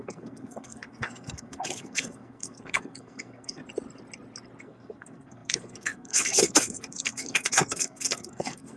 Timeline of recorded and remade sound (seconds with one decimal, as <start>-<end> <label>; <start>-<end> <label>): 0.0-3.6 remade; 3.6-4.6 recorded; 4.6-8.8 remade